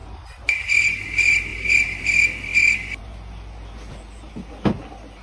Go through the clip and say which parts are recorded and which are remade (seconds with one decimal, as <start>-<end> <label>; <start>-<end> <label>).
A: 0.0-5.2 recorded